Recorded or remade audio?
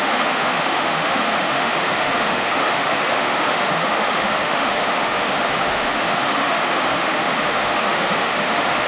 remade